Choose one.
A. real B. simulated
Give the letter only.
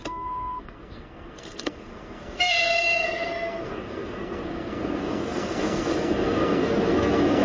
B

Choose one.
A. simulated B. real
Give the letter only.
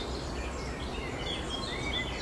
B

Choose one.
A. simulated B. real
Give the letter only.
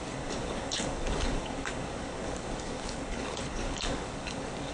A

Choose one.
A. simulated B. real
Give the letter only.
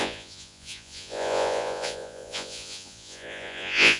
A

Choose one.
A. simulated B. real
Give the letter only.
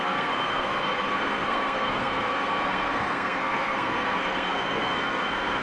A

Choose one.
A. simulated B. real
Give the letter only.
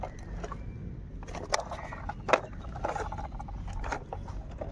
B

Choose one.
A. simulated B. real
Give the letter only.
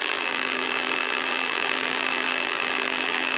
A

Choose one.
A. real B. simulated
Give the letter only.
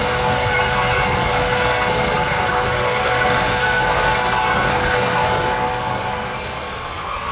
B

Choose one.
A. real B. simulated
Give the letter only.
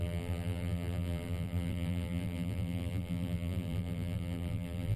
B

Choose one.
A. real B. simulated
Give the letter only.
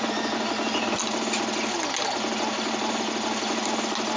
A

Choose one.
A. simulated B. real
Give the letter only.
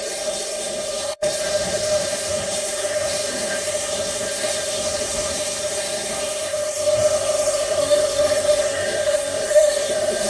A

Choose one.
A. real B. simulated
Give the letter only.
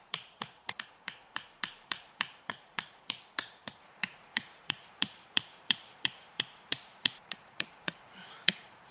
B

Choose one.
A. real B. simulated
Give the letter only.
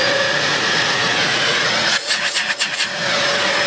B